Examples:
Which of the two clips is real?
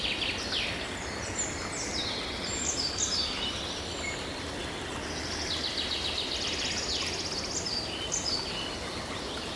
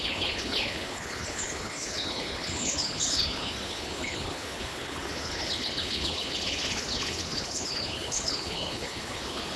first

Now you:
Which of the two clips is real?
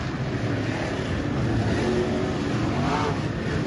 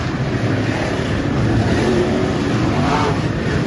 first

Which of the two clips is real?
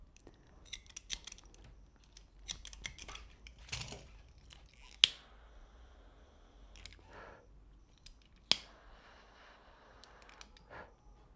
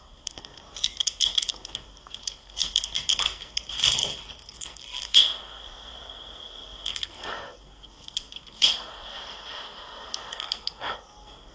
first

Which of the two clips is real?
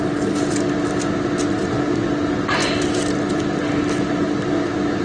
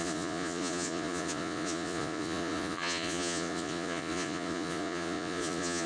first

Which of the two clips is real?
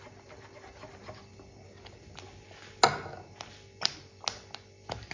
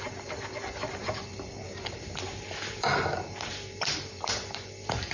first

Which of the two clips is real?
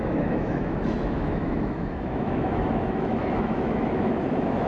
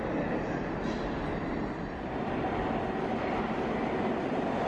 second